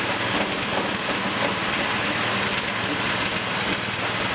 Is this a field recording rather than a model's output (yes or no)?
yes